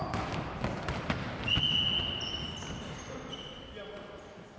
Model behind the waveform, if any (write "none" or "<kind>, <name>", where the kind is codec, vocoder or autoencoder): none